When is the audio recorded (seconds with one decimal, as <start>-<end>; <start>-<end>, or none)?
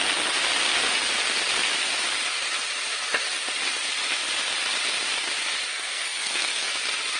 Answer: 0.0-5.7; 6.7-7.2